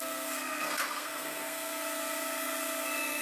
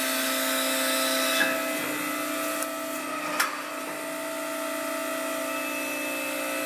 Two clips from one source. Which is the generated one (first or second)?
first